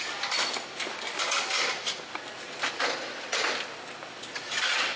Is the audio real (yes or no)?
yes